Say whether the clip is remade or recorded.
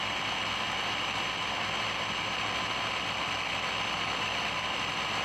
recorded